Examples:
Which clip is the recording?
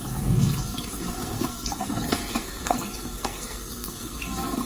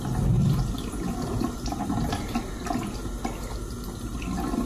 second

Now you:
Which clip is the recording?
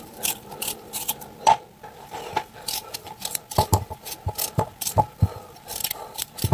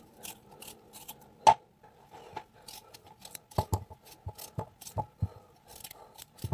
second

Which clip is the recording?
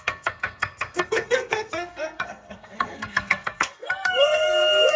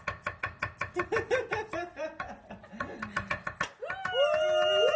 second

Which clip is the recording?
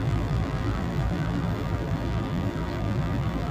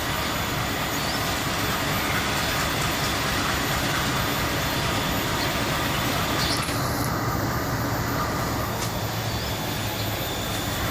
second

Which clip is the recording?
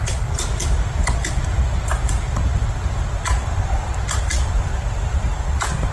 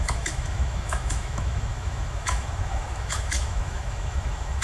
first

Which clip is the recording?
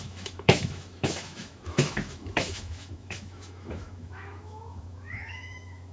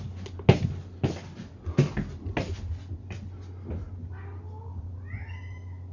second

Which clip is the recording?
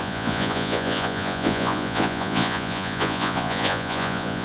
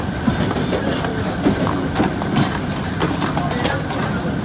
second